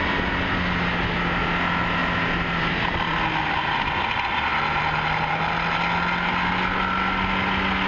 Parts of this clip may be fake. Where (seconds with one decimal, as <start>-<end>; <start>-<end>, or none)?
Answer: none